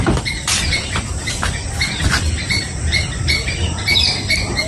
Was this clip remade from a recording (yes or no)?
yes